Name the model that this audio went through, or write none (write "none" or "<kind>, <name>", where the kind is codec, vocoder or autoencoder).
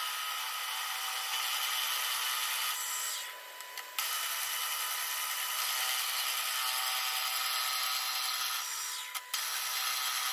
none